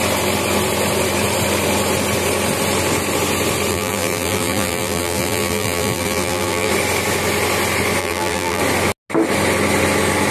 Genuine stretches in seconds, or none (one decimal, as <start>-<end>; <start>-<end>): 0.0-3.7; 6.7-8.0; 8.6-10.3